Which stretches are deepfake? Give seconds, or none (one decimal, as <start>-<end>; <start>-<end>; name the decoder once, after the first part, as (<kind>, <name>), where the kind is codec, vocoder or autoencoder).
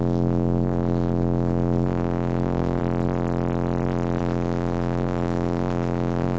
0.0-2.8 (codec, DAC); 4.2-6.4